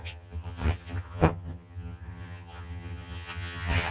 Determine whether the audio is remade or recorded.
remade